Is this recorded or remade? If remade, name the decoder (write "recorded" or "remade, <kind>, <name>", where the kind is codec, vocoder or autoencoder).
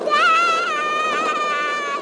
recorded